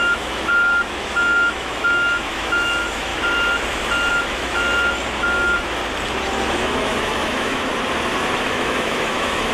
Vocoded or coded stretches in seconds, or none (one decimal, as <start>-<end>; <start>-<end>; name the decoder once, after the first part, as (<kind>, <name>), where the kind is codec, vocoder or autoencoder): 0.0-3.1 (autoencoder, DAC-VAE); 4.1-4.6; 5.2-5.8; 6.6-7.7; 8.4-9.5